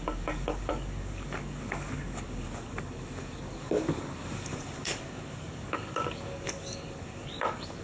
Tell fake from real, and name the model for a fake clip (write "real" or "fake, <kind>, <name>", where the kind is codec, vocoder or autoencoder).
fake, codec, DAC